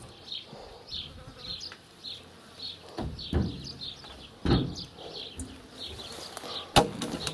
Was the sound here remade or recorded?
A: recorded